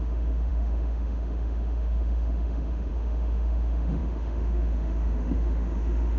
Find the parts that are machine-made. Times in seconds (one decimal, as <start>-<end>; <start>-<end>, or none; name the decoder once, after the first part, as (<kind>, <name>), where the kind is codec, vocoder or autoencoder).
0.0-6.2 (autoencoder, DAC-VAE)